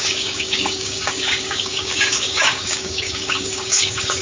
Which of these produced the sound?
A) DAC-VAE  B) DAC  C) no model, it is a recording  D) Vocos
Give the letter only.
B